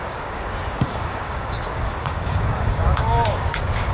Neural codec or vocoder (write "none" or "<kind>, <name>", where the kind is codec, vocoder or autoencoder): codec, DAC